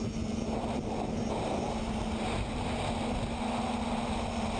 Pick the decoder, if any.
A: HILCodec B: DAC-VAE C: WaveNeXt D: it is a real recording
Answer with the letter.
D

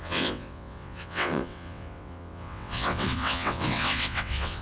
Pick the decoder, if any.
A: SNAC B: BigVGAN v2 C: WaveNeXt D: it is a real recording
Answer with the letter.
C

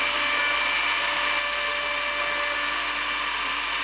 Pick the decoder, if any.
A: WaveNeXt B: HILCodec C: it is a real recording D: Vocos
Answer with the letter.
C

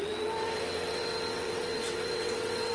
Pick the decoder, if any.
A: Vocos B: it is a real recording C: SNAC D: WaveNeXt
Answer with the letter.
D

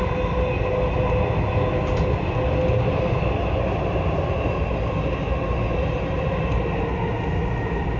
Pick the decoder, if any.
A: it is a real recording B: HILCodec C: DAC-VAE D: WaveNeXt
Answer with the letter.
A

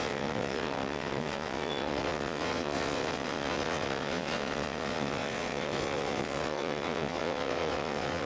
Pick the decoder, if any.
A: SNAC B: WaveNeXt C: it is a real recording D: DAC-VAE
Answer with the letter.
B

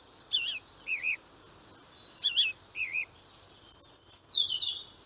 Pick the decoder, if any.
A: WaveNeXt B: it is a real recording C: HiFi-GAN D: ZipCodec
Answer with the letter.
B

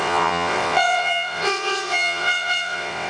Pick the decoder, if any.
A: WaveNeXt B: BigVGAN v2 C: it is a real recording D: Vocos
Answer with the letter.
A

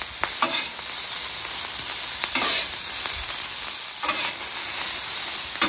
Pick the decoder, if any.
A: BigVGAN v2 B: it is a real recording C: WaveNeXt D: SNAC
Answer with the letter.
B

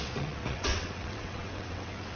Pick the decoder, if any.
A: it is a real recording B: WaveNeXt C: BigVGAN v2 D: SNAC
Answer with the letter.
B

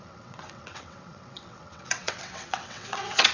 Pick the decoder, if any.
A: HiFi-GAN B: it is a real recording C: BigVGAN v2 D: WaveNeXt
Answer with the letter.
D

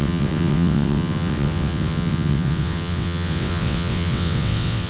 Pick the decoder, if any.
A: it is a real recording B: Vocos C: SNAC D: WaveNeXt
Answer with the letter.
D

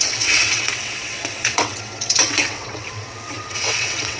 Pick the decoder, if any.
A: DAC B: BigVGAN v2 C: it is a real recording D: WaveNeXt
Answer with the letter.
D